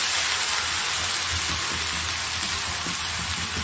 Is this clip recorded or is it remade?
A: recorded